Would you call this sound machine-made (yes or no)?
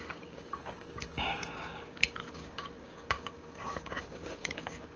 yes